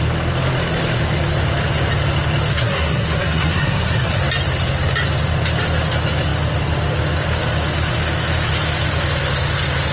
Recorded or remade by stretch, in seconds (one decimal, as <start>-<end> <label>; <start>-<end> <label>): 0.0-2.5 recorded; 2.5-4.2 remade; 4.2-9.9 recorded